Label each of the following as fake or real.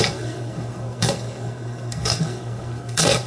fake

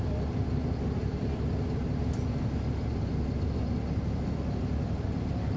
real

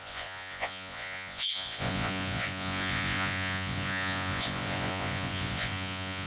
fake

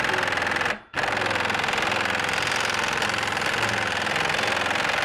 real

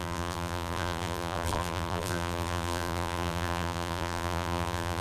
fake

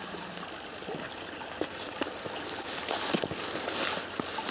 real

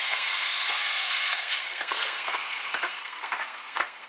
fake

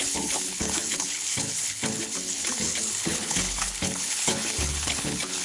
fake